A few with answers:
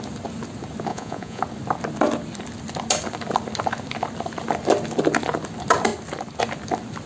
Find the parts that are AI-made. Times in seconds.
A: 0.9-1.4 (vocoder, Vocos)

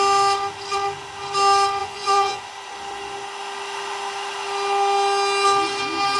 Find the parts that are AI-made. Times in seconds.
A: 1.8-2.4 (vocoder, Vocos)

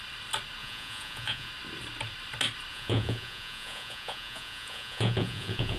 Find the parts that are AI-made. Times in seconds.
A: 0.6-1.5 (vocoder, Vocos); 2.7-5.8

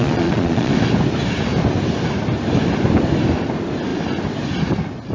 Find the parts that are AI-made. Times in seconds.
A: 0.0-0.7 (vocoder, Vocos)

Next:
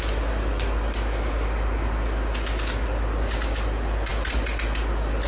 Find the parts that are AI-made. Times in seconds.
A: none